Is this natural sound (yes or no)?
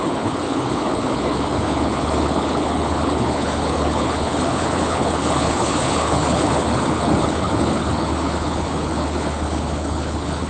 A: no